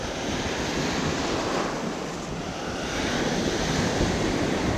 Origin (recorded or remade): recorded